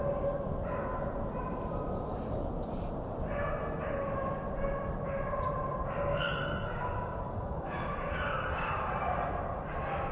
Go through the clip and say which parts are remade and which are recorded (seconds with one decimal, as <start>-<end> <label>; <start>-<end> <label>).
0.0-6.1 recorded; 6.1-8.9 remade; 8.9-10.1 recorded